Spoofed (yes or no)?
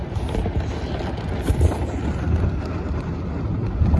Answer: no